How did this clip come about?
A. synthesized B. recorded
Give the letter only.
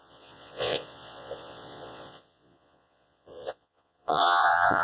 A